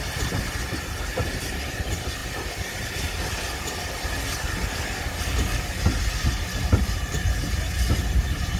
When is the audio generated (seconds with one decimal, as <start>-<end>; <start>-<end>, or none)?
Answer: none